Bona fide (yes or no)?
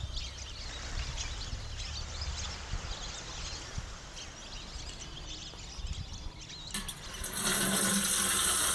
yes